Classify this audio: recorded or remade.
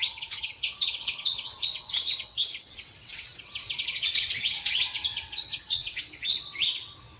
remade